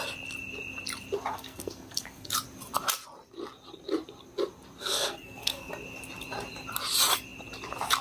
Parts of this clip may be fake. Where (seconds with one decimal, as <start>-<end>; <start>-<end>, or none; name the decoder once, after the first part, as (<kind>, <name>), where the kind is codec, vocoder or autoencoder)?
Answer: 1.3-2.3 (codec, SNAC); 4.8-5.7